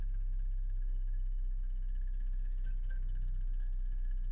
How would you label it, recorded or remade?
remade